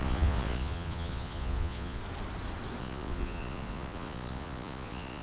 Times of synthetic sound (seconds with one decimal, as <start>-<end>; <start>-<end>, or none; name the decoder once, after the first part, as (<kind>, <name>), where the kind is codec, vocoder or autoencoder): 0.0-2.0 (vocoder, Vocos); 2.8-5.2